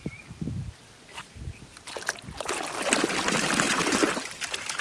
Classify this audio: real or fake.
real